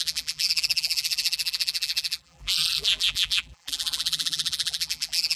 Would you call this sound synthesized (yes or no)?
yes